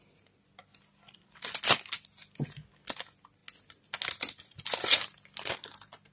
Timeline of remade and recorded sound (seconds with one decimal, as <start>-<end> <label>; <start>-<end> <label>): 0.0-6.1 recorded